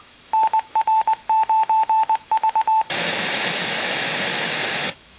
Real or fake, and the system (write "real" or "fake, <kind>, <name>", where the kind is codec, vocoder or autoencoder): fake, autoencoder, DAC-VAE